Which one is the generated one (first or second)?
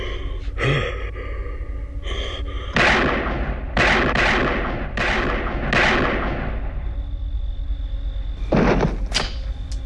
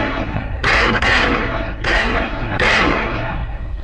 second